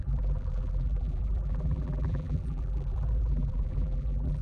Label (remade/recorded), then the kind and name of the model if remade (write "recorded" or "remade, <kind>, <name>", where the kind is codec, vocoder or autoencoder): remade, vocoder, BigVGAN v2